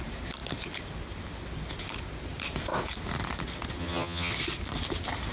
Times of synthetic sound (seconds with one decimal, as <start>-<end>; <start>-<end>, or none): 3.8-4.3